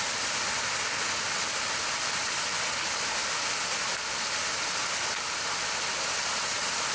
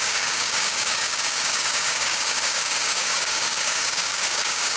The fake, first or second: second